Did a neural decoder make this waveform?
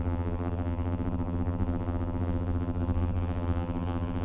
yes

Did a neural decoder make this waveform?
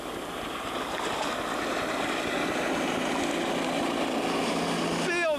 no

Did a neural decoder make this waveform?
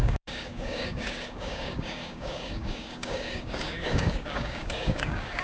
yes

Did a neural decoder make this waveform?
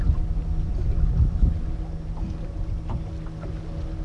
no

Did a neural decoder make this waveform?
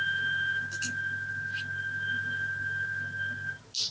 no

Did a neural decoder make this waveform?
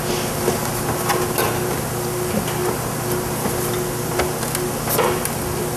no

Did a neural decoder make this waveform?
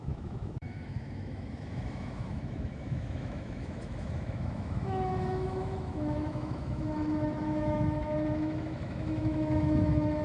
yes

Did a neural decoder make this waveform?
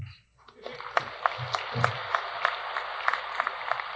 no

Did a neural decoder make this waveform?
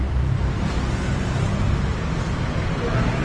no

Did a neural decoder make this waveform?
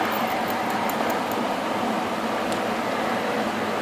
no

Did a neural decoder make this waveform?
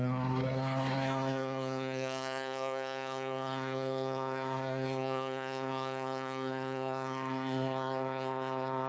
yes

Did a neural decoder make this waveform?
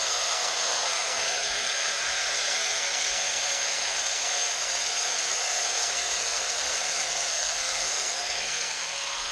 yes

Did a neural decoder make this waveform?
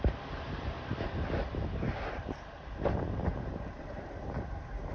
yes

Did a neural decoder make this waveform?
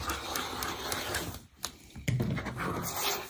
yes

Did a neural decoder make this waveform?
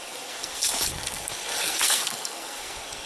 yes